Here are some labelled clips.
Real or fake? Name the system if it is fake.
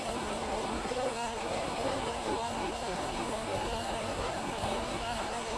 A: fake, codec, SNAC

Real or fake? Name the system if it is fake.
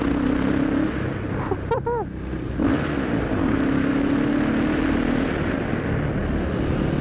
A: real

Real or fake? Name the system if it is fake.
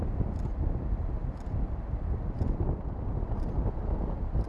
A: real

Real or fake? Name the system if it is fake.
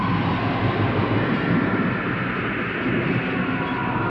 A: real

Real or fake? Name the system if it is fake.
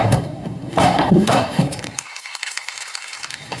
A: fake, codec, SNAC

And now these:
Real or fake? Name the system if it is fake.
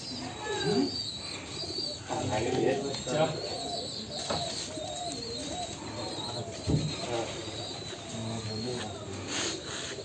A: real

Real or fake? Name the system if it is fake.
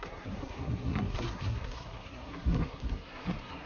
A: fake, codec, SNAC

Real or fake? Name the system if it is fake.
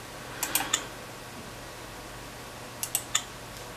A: real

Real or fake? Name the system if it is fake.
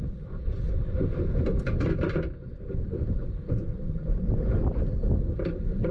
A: real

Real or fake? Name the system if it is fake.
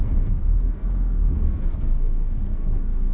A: fake, codec, SNAC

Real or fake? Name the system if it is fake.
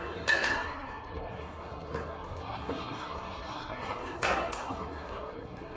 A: fake, codec, SNAC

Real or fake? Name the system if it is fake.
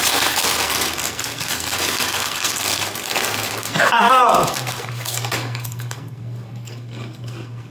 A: fake, codec, SNAC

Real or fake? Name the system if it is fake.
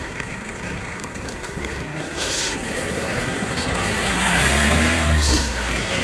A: fake, codec, SNAC